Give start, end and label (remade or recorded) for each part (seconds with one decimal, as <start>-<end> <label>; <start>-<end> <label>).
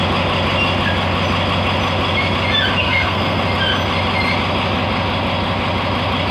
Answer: 0.0-2.8 recorded; 2.8-3.4 remade; 3.4-6.3 recorded